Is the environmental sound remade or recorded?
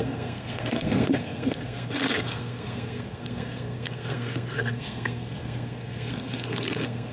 remade